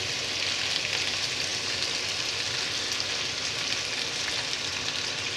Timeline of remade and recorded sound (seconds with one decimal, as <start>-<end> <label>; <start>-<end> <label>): 0.0-5.4 recorded